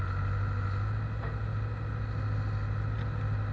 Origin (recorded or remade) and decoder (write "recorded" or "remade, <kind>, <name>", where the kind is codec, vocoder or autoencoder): recorded